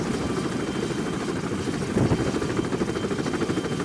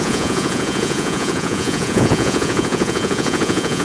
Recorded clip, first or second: first